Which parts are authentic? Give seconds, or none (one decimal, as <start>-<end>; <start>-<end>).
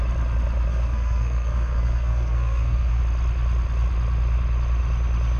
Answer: 0.0-0.7; 3.0-5.4